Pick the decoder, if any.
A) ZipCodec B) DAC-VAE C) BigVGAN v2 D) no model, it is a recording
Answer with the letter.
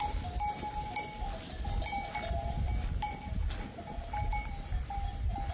D